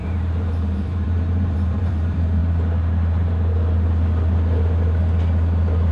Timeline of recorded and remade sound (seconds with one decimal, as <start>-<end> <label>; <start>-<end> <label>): 0.0-2.4 remade; 2.4-5.9 recorded